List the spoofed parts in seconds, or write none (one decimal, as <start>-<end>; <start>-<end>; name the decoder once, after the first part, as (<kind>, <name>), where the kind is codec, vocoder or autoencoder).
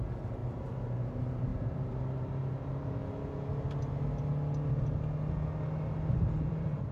0.0-3.0 (vocoder, BigVGAN v2); 6.1-6.9